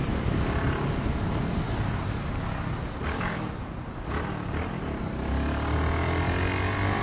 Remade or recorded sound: recorded